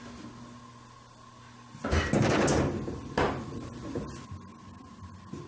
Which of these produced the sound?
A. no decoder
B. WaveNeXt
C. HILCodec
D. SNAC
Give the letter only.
A